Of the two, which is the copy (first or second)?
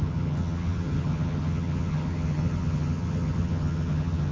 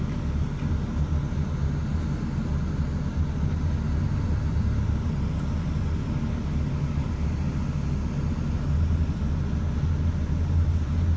first